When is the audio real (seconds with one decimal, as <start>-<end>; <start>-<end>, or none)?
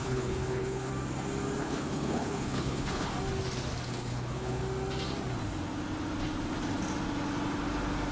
0.9-1.6; 3.1-3.9; 4.6-8.1